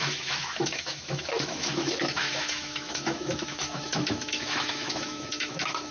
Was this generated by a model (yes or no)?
yes